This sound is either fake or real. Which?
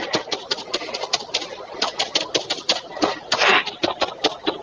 real